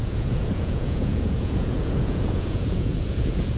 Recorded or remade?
remade